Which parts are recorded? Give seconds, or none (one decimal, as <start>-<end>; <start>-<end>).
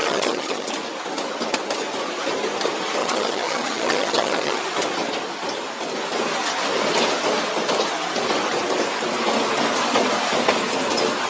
0.7-3.0; 4.6-11.3